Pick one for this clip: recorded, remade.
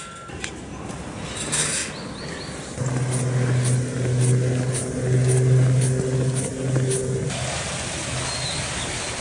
recorded